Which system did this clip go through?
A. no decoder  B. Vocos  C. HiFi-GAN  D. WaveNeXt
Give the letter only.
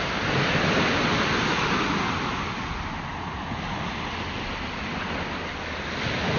A